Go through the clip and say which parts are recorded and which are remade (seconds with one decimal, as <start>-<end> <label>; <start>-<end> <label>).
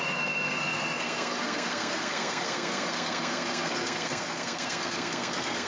0.0-5.7 remade